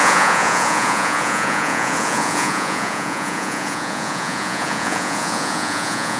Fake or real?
fake